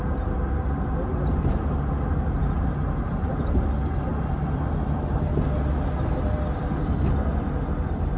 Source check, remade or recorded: recorded